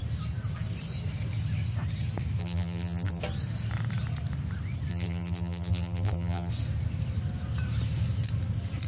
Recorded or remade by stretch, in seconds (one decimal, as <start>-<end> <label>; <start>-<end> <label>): 0.0-2.4 recorded; 2.4-3.2 remade; 3.2-4.9 recorded; 4.9-6.5 remade; 6.5-8.9 recorded